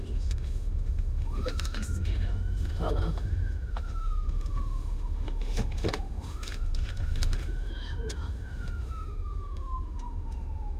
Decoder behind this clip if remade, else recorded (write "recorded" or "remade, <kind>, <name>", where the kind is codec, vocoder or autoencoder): remade, autoencoder, DAC-VAE